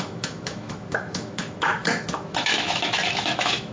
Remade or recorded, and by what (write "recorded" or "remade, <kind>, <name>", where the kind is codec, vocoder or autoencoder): remade, autoencoder, DAC-VAE